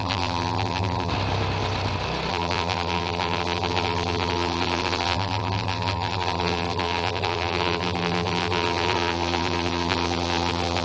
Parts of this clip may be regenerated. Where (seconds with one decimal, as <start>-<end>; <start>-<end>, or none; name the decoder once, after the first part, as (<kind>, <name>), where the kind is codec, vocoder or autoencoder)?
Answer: 0.0-1.1 (vocoder, BigVGAN v2); 2.3-10.8